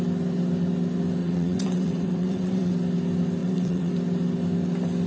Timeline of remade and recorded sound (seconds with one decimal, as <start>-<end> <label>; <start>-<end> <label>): 0.0-1.2 recorded; 1.2-2.7 remade; 2.7-3.4 recorded; 3.4-3.9 remade; 3.9-5.1 recorded